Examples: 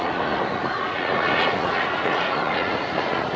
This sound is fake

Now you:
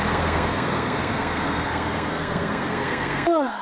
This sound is fake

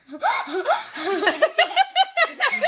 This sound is fake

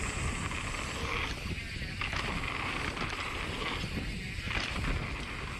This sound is real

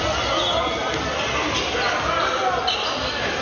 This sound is real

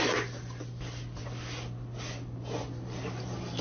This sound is real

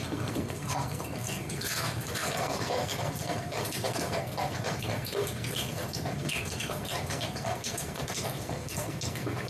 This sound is fake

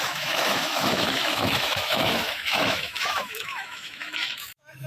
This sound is fake